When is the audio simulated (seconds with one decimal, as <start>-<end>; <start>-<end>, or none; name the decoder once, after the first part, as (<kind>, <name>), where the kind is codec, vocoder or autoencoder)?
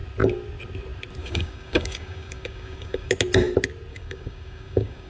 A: 1.2-3.1 (codec, DAC); 3.9-5.1